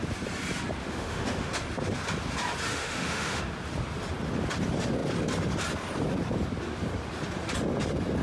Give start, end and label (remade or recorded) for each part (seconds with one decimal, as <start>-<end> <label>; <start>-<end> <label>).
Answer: 0.0-0.8 recorded; 0.8-1.5 remade; 1.5-2.7 recorded; 2.7-3.4 remade; 3.4-8.2 recorded